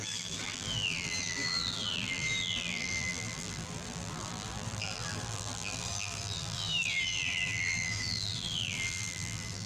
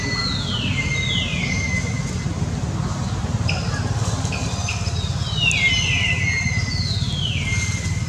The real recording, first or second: second